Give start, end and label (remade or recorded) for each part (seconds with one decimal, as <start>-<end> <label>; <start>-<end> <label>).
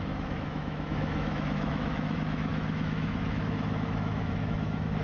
0.0-5.0 remade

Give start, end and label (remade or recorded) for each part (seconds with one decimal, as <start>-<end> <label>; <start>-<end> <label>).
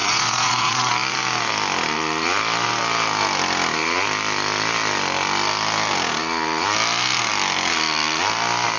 0.0-0.9 remade; 0.9-8.8 recorded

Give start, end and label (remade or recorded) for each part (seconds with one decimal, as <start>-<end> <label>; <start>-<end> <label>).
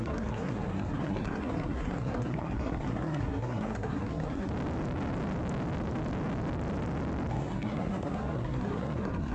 0.0-4.5 remade; 4.5-7.3 recorded; 7.3-9.3 remade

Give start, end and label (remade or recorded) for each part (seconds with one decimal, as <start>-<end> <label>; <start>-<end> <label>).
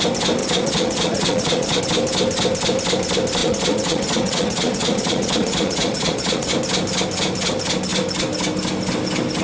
0.0-0.4 recorded; 0.4-1.8 remade; 1.8-3.4 recorded; 3.4-6.5 remade; 6.5-9.4 recorded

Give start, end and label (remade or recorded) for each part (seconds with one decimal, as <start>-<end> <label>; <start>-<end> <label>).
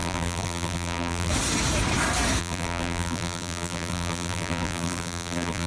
0.0-1.3 remade; 1.3-2.4 recorded; 2.4-5.7 remade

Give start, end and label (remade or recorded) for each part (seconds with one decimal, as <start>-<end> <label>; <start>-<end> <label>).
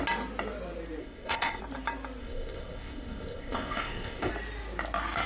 0.0-1.0 recorded; 1.0-1.6 remade; 1.6-2.2 recorded; 2.2-4.3 remade; 4.3-5.3 recorded